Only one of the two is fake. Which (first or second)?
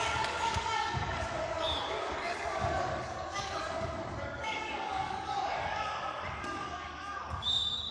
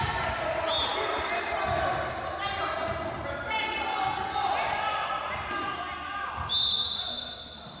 first